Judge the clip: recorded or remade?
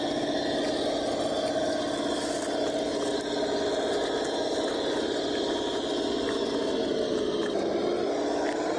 recorded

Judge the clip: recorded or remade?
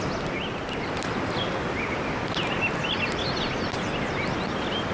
recorded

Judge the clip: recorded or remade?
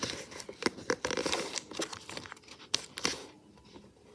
recorded